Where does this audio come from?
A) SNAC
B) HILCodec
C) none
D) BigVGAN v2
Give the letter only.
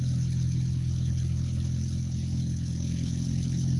B